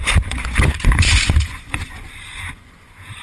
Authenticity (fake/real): fake